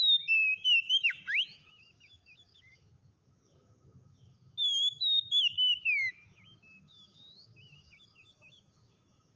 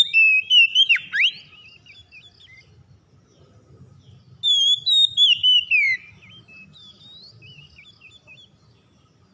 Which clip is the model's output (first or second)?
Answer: first